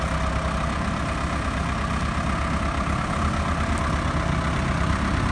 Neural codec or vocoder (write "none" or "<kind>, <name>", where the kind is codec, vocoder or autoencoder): none